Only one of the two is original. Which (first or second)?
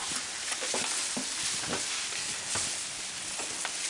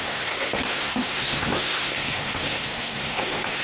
first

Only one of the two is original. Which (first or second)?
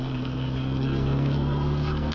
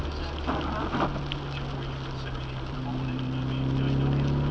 second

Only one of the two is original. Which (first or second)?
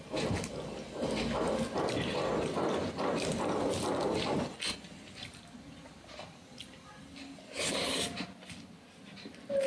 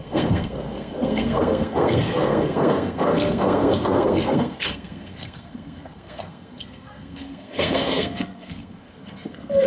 first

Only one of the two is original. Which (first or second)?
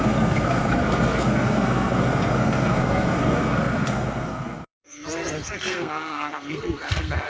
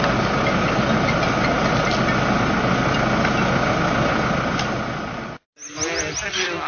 second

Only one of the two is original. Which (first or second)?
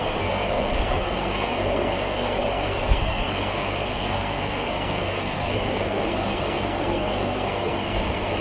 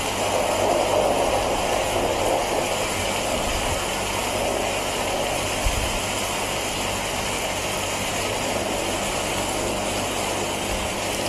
second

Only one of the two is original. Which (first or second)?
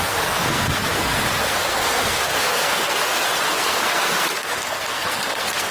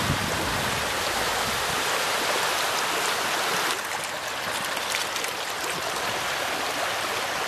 second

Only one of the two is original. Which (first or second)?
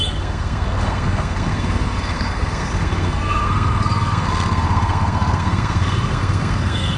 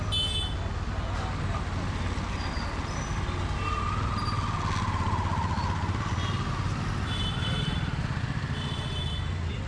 second